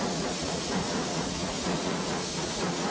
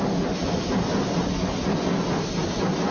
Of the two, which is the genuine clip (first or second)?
second